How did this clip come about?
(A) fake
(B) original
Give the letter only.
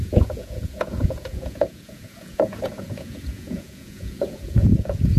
A